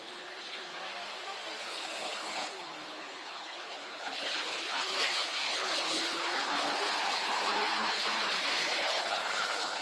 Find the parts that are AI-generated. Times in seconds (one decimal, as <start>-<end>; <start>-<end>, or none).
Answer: 0.0-0.8; 1.6-9.8